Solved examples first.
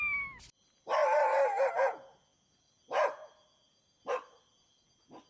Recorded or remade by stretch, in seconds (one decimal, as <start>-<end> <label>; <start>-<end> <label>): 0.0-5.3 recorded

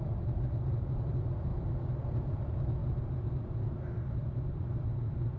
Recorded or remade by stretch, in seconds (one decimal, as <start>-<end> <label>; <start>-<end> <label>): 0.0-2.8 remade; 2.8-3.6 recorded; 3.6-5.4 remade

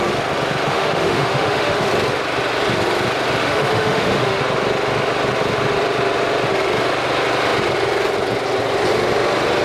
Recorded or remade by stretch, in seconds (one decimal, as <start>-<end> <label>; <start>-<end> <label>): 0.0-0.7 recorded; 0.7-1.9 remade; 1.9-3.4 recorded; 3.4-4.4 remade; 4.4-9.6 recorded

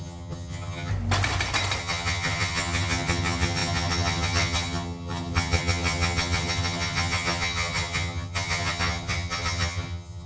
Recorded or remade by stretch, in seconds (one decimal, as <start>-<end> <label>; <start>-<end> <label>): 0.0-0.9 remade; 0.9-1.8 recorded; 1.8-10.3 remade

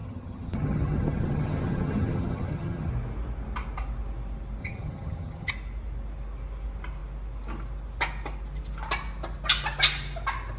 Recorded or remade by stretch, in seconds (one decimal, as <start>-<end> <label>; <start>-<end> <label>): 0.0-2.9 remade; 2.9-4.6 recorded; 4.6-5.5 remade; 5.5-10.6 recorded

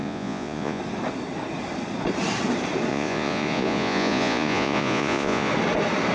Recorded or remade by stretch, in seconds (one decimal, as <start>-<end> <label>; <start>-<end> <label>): 0.0-0.8 remade; 0.8-2.9 recorded; 2.9-5.5 remade; 5.5-6.1 recorded

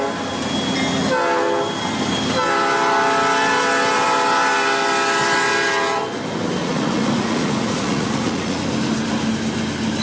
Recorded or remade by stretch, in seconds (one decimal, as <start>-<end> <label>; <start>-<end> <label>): 0.0-6.6 recorded; 6.6-8.6 remade; 8.6-10.0 recorded